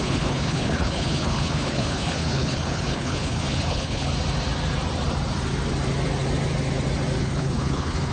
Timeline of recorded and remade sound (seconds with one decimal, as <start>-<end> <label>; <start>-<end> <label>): 0.0-4.1 remade; 4.1-7.2 recorded; 7.2-8.1 remade